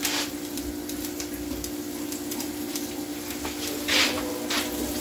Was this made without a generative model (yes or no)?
yes